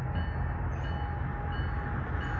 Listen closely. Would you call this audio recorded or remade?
recorded